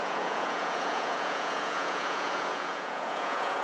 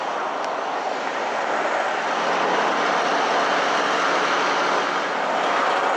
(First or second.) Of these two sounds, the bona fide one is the second